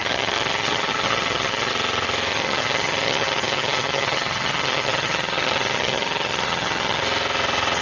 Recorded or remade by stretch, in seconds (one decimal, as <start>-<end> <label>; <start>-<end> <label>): 0.0-1.7 remade; 1.7-2.3 recorded; 2.3-7.0 remade; 7.0-7.8 recorded